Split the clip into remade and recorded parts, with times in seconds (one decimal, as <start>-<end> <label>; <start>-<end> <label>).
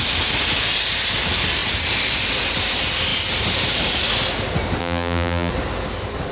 0.0-4.8 recorded; 4.8-5.5 remade; 5.5-6.3 recorded